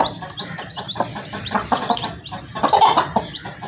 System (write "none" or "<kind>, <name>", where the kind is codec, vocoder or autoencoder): vocoder, BigVGAN v2